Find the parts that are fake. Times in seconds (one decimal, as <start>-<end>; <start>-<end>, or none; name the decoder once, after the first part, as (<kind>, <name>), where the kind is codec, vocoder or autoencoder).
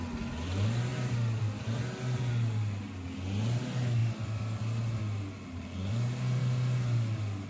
none